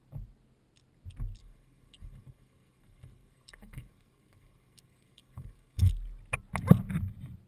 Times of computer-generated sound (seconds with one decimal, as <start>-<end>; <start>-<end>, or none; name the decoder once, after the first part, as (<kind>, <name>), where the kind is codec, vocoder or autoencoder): 1.4-5.9 (codec, SNAC)